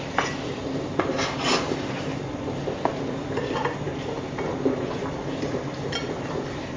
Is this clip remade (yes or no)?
no